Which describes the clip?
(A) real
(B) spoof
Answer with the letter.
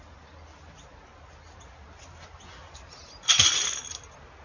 A